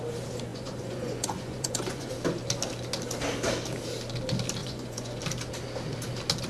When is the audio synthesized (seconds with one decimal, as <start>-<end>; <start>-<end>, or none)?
0.5-2.1; 4.6-5.2